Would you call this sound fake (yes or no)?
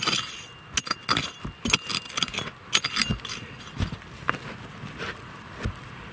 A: no